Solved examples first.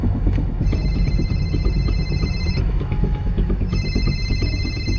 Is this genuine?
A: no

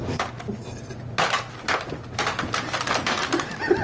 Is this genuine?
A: yes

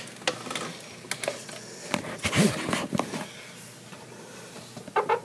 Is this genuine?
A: yes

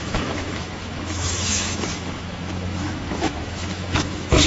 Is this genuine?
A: no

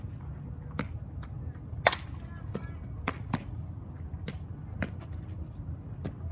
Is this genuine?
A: yes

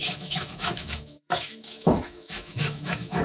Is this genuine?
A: no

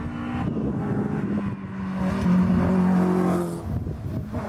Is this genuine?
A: yes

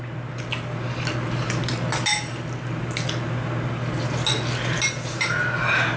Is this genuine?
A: yes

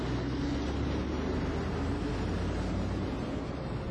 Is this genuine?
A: yes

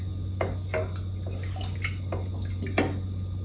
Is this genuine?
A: yes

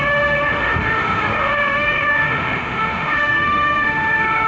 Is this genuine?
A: no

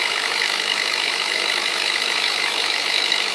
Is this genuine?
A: no